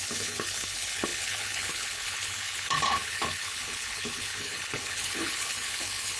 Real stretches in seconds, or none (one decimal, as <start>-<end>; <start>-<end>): none